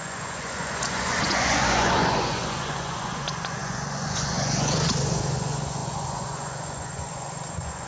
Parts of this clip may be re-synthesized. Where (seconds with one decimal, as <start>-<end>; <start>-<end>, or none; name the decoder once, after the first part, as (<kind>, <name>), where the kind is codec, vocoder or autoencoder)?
0.0-7.9 (vocoder, Vocos)